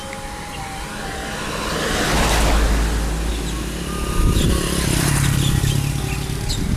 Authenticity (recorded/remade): recorded